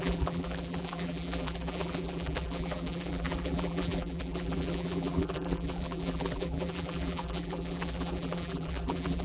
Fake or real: fake